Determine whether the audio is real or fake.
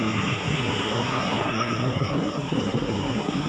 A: fake